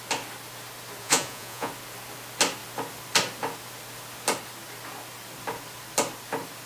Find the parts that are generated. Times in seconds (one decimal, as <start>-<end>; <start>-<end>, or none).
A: 1.0-1.7